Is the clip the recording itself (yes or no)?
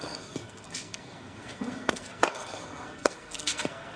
no